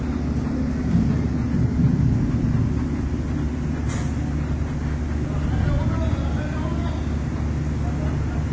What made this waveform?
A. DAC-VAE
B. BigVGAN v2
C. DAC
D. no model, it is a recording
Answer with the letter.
D